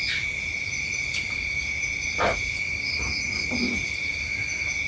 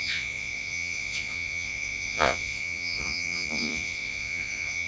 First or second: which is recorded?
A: first